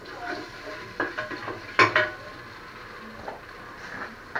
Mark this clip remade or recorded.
recorded